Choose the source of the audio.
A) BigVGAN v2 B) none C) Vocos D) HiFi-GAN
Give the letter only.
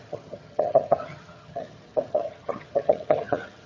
D